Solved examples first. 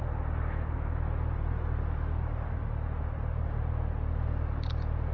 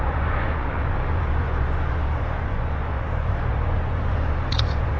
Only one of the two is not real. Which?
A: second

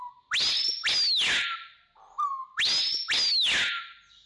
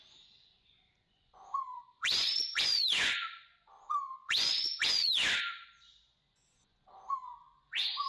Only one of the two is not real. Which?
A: second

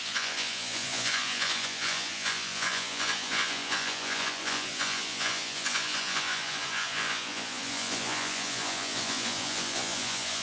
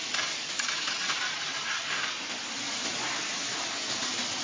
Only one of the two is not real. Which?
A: first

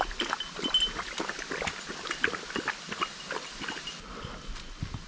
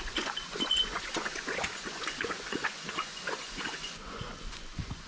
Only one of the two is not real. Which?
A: second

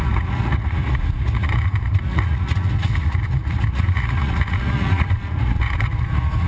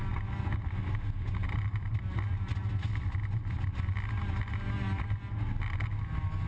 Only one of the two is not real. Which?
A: first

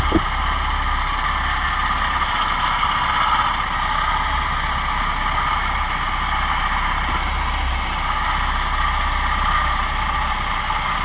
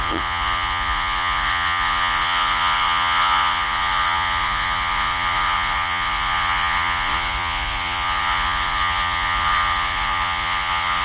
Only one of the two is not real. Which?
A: second